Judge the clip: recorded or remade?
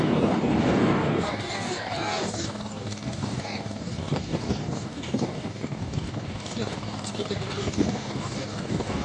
remade